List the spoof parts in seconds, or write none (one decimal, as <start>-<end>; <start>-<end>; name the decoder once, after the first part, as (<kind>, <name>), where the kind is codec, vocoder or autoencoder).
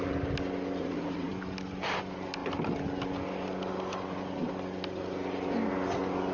0.8-1.3 (vocoder, Vocos)